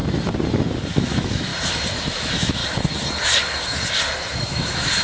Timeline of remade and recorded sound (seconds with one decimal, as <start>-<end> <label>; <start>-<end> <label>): 0.0-0.9 recorded; 0.9-1.5 remade; 1.5-2.1 recorded; 2.1-2.6 remade; 2.6-4.3 recorded; 4.3-5.0 remade